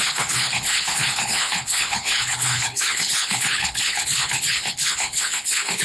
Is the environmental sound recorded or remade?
remade